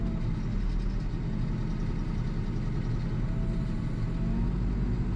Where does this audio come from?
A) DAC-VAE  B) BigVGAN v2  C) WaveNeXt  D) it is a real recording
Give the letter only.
D